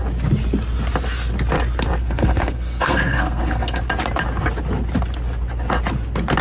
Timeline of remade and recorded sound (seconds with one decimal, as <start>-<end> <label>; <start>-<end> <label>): 0.0-2.0 recorded; 2.0-3.8 remade; 3.8-6.4 recorded